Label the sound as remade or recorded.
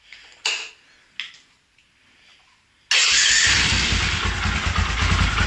recorded